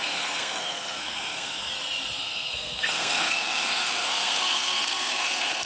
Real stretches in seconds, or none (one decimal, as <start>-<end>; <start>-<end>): 1.7-2.2